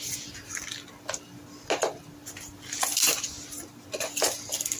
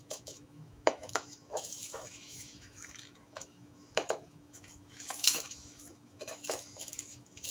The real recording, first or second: first